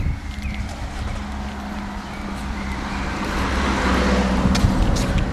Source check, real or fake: real